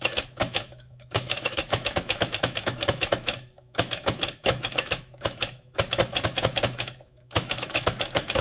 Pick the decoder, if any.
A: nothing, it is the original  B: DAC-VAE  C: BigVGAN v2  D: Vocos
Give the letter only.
B